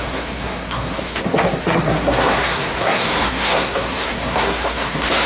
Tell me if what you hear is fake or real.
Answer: fake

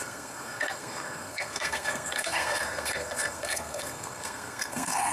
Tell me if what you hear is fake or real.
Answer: fake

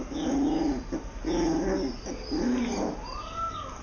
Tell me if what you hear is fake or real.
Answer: real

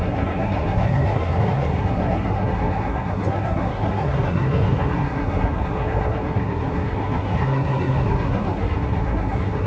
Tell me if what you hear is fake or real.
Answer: fake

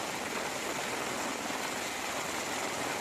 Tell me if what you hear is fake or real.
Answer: real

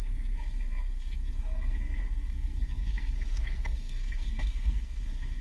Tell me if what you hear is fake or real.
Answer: fake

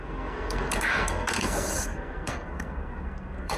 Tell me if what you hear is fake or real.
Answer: fake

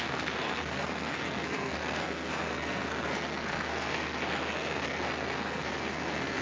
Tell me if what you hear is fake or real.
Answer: fake